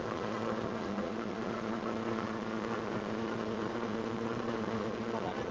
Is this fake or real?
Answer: fake